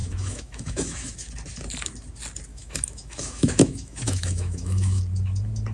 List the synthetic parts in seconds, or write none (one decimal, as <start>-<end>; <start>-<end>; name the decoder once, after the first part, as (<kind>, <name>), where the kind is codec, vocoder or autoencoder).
0.0-1.3 (autoencoder, DAC-VAE); 2.5-5.0